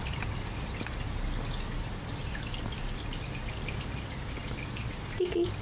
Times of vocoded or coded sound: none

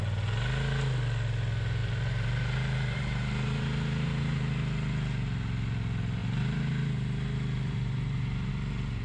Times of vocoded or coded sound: 1.8-4.4; 6.2-8.5

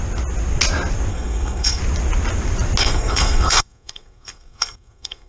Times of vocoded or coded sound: 1.1-1.8; 2.8-5.3

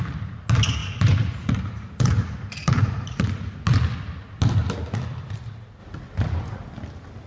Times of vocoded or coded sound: 0.8-3.6

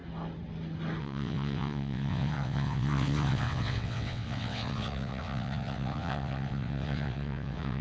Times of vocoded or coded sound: 1.0-7.8

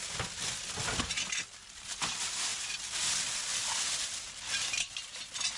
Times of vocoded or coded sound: none

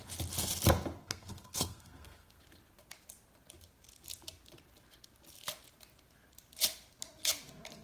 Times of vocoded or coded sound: 1.0-2.4